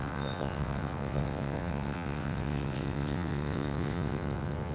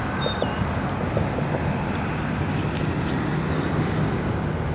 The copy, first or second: first